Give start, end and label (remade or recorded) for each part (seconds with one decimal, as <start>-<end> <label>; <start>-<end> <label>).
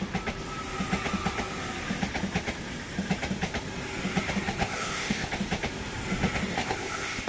0.0-4.6 recorded; 4.6-5.3 remade; 5.3-6.5 recorded; 6.5-7.3 remade